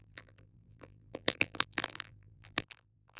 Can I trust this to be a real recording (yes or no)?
no